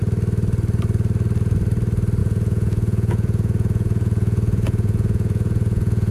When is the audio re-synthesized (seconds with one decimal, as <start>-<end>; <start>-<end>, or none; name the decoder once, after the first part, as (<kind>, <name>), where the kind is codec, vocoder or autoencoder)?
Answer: 2.2-6.1 (vocoder, Vocos)

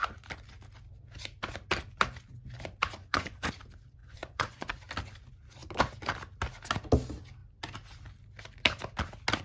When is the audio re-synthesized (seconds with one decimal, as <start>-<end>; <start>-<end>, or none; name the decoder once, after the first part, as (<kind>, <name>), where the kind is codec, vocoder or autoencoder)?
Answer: 3.0-3.5 (vocoder, Vocos); 4.0-4.7

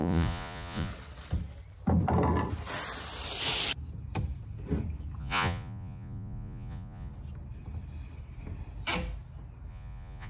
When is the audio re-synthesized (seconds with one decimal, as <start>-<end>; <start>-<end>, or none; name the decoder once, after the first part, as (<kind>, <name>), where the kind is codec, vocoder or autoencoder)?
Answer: 0.0-0.9 (vocoder, Vocos); 5.2-7.1; 9.7-10.3

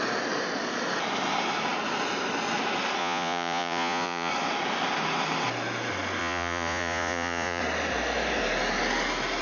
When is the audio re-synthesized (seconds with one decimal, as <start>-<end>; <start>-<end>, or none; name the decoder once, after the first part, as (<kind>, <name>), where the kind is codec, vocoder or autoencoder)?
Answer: 3.0-4.3 (vocoder, Vocos); 6.2-7.6